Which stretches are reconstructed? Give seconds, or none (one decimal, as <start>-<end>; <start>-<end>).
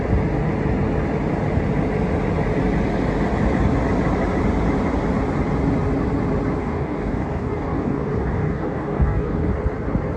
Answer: 6.6-9.5